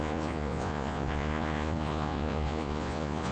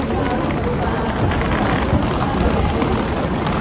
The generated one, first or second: first